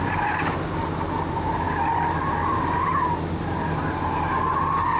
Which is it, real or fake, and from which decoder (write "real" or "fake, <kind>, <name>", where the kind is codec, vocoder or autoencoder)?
real